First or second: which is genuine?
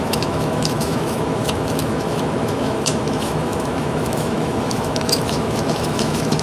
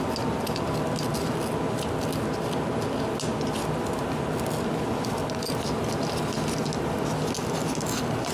second